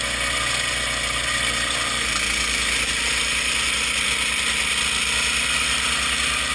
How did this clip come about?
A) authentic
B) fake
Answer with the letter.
A